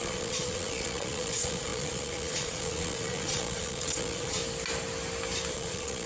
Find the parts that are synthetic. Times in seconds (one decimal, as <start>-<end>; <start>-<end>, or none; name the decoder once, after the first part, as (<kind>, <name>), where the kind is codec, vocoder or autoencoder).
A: 0.0-4.4 (vocoder, Vocos); 5.5-6.1